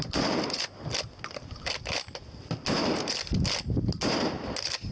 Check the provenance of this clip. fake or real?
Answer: real